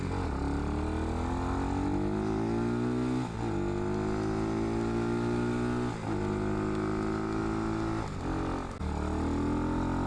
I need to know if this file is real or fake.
real